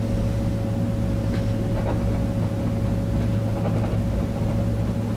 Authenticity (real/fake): real